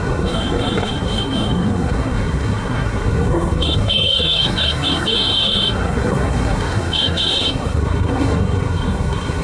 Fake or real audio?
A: fake